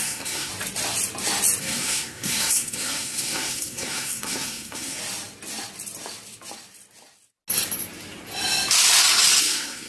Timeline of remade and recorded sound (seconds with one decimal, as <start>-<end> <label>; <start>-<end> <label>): 0.0-0.5 remade; 0.5-1.6 recorded; 1.6-5.0 remade; 5.0-9.4 recorded; 9.4-9.9 remade